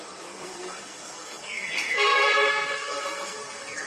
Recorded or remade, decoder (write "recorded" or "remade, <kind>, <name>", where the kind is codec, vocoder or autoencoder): remade, codec, SNAC